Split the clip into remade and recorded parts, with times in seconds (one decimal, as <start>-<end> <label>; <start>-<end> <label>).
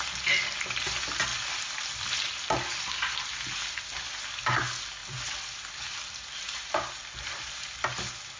0.0-5.0 recorded; 5.0-7.3 remade; 7.3-8.4 recorded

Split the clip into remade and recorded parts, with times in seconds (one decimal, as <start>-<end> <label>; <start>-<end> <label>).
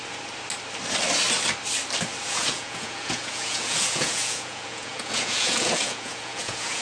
0.0-2.3 recorded; 2.3-6.8 remade